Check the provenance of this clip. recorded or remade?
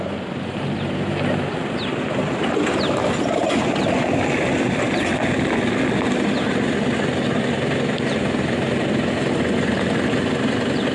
recorded